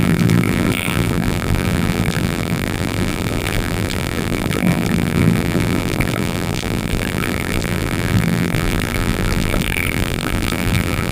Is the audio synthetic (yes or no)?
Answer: yes